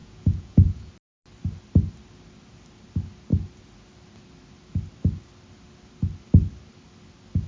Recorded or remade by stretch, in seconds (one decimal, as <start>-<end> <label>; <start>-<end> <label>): 0.0-0.9 remade; 0.9-7.5 recorded